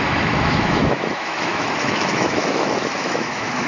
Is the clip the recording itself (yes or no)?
no